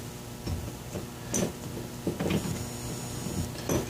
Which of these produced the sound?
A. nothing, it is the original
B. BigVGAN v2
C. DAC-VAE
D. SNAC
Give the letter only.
A